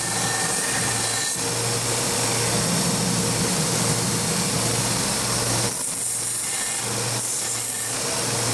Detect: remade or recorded recorded